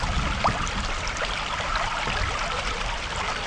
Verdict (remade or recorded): recorded